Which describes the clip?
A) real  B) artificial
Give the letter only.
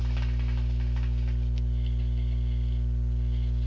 A